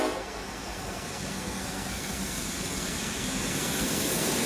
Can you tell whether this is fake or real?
fake